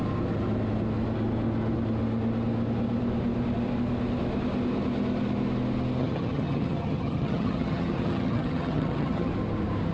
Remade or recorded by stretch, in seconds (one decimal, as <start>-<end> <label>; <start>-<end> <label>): 0.0-6.0 recorded; 6.0-9.3 remade; 9.3-9.9 recorded